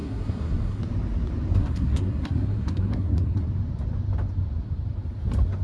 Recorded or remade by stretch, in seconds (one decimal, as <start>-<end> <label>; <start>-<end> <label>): 0.0-0.8 remade; 0.8-1.6 recorded; 1.6-3.5 remade; 3.5-5.6 recorded